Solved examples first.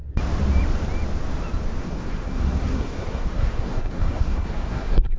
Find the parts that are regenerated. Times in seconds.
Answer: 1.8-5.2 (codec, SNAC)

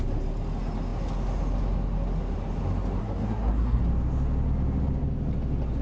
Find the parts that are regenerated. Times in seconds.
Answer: 3.0-3.8 (codec, SNAC)

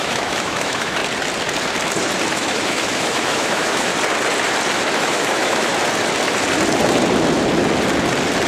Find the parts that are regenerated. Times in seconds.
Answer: 0.0-1.0 (autoencoder, DAC-VAE); 2.3-3.9; 5.0-5.7

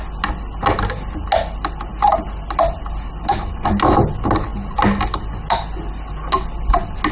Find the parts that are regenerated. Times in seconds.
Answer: none

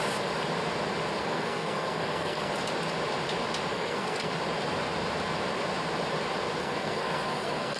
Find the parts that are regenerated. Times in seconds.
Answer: 1.2-2.5 (codec, SNAC); 3.7-4.3; 6.6-7.8

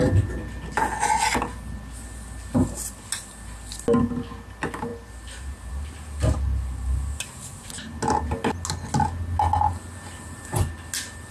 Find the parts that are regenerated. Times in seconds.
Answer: none

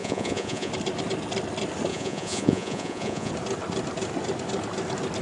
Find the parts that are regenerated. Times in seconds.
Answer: 0.0-0.7 (vocoder, Vocos); 1.9-3.3